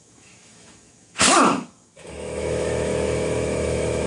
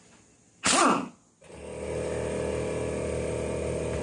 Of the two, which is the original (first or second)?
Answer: second